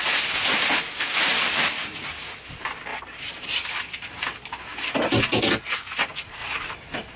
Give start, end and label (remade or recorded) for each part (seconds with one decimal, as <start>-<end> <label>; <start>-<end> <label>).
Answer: 0.0-1.3 recorded; 1.3-2.2 remade; 2.2-2.9 recorded; 2.9-4.2 remade; 4.2-6.4 recorded; 6.4-7.2 remade